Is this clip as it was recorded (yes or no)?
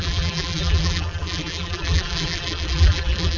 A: no